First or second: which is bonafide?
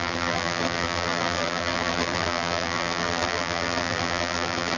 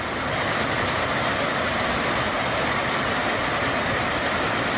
second